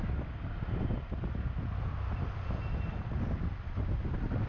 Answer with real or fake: real